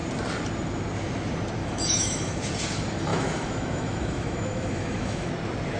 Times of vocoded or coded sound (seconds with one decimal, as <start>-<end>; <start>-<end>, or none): 1.6-2.4; 3.1-5.3